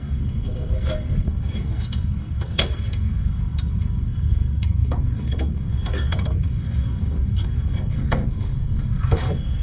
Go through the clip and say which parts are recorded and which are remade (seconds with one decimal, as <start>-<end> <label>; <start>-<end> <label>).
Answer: 0.0-9.6 remade